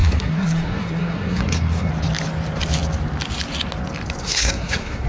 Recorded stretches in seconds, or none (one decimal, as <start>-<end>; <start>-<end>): 1.9-4.2

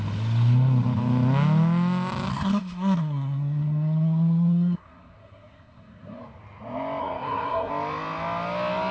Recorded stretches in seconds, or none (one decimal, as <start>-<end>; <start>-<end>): 0.0-2.3; 6.2-7.0; 7.7-8.9

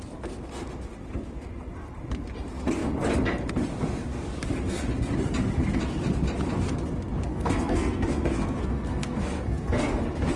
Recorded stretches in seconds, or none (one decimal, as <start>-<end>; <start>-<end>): 0.0-7.3; 10.0-10.4

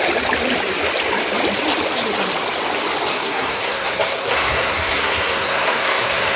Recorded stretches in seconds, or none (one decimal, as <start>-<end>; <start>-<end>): 0.0-3.1

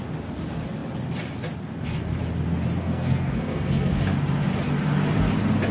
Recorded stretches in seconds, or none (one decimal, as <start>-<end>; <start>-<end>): 0.0-2.8; 4.0-5.7

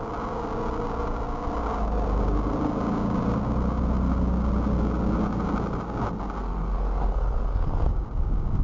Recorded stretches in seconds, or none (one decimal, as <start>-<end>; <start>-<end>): 0.0-6.4; 7.9-8.6

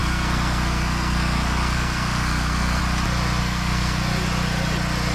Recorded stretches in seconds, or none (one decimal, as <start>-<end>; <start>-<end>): 2.8-3.4; 4.0-5.1